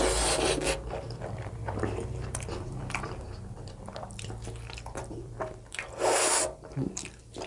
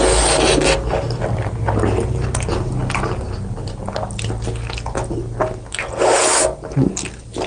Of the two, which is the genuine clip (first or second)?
second